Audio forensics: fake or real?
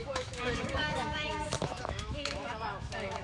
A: fake